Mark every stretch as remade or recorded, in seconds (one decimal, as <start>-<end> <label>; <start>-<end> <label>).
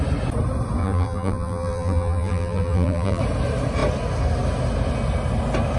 0.0-0.8 recorded; 0.8-3.2 remade; 3.2-5.8 recorded